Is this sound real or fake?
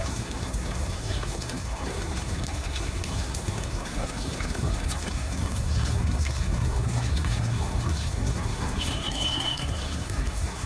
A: fake